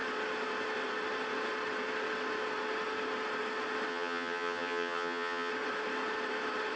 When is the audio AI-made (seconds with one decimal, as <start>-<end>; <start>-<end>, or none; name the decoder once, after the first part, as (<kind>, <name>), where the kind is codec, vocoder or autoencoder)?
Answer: 3.9-5.5 (vocoder, HiFi-GAN)